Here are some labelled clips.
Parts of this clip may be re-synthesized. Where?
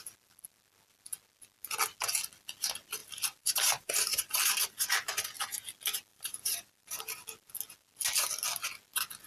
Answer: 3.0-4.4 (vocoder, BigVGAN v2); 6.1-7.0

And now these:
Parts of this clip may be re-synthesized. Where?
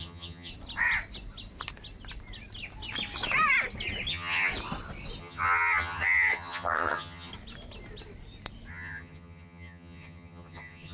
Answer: 0.0-0.5 (vocoder, HiFi-GAN); 4.1-4.5; 5.2-7.3; 8.7-10.9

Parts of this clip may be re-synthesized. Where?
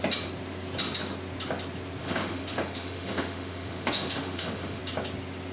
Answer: 2.0-4.8 (autoencoder, DAC-VAE)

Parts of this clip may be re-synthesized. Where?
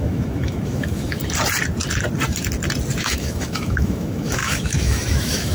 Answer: 0.0-1.2 (autoencoder, DAC-VAE); 3.0-5.5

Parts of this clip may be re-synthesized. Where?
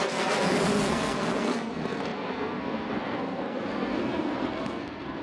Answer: 0.0-5.2 (codec, SNAC)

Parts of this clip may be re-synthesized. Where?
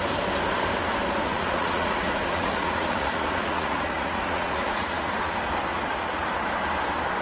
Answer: 1.3-5.3 (vocoder, Vocos); 5.7-6.2